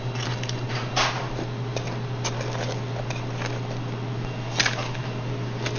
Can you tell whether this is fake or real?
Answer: real